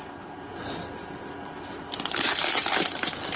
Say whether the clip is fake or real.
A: real